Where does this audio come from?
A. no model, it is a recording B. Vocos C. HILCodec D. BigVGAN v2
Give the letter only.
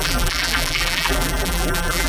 D